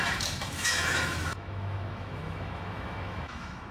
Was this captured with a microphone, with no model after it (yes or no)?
no